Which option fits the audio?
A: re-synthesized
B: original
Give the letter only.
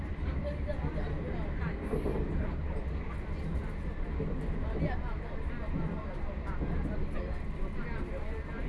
B